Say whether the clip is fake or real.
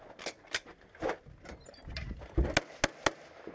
real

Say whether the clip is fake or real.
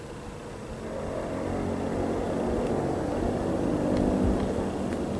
real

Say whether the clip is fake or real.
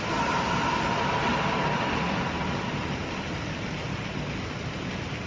real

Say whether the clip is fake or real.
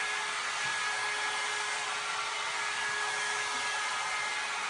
real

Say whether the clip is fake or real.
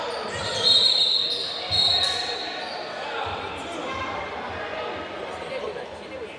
real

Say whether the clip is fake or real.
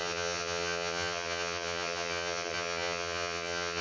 fake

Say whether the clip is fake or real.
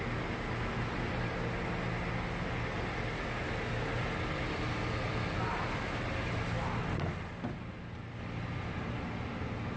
real